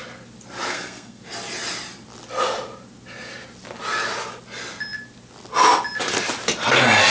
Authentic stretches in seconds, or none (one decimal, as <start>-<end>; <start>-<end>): 0.0-0.7; 1.2-7.1